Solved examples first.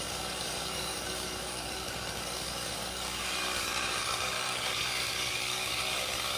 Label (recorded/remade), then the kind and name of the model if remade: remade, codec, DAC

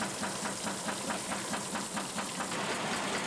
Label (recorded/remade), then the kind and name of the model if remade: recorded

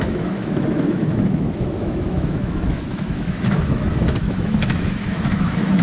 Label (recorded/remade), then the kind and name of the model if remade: remade, autoencoder, DAC-VAE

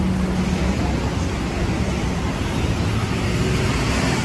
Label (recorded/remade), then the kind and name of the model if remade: recorded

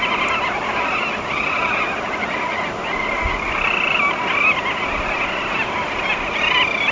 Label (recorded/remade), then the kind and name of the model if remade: recorded